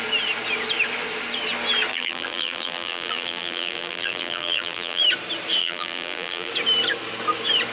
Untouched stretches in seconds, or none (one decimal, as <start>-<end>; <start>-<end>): 0.0-1.9; 5.0-5.6; 6.5-7.7